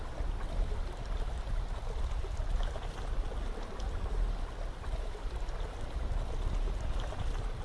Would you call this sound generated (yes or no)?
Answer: no